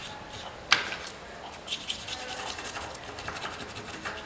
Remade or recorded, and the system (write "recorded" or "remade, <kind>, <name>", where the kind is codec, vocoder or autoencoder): recorded